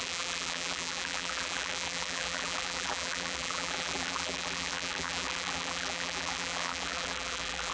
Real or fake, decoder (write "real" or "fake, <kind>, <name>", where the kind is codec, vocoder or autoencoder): fake, vocoder, BigVGAN v2